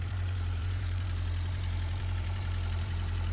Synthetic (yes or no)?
yes